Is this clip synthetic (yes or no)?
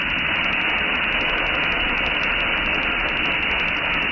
no